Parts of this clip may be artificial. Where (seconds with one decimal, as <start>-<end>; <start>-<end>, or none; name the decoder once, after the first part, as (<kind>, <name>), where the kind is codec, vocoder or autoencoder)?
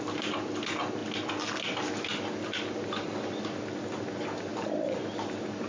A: none